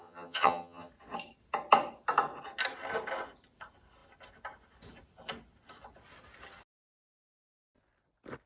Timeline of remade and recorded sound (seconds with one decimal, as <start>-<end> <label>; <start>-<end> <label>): 0.0-0.9 remade; 0.9-8.5 recorded